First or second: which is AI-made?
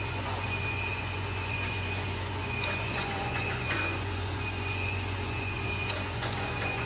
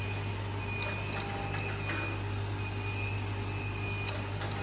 first